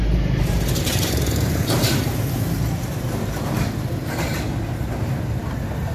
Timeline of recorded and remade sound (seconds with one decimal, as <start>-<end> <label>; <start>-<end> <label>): 0.0-4.3 remade; 4.3-4.8 recorded; 4.8-5.9 remade